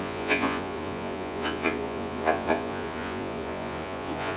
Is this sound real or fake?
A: fake